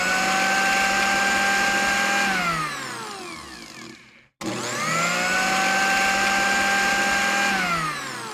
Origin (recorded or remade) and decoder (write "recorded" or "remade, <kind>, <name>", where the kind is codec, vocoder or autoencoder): recorded